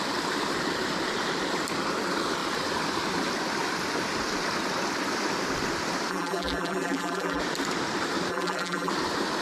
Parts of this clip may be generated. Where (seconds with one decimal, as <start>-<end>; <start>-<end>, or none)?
6.1-7.4; 8.3-8.9